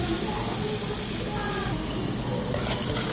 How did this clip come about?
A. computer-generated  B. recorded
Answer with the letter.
B